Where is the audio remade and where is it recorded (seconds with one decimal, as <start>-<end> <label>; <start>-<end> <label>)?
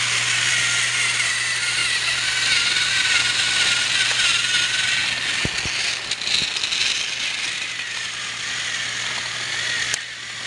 0.0-10.5 recorded